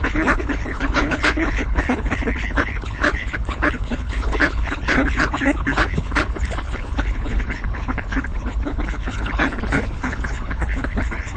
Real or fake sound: fake